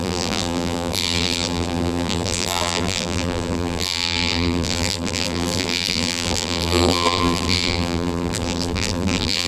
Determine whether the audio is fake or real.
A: fake